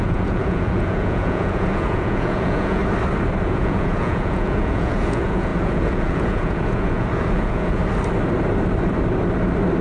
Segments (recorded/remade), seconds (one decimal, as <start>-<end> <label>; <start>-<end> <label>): 0.0-2.8 remade; 2.8-3.4 recorded; 3.4-7.8 remade; 7.8-9.8 recorded